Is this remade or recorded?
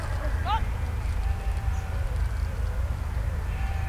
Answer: recorded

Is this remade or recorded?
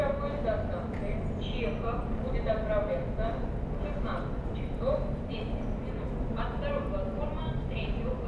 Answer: recorded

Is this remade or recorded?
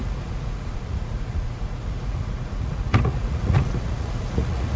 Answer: remade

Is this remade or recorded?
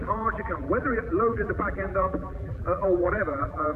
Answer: remade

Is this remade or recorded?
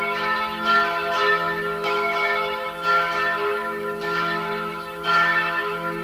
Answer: remade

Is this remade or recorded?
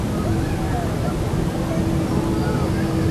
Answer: recorded